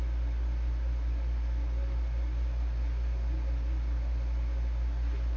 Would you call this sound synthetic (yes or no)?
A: no